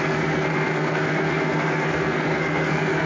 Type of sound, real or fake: fake